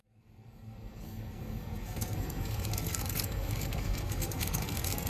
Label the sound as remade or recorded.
remade